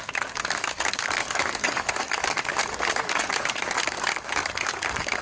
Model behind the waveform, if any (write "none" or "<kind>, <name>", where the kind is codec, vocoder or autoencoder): codec, DAC